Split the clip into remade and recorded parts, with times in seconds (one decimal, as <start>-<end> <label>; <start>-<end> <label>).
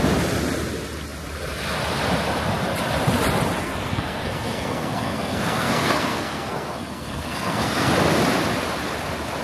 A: 0.0-3.6 recorded; 3.6-7.9 remade; 7.9-9.4 recorded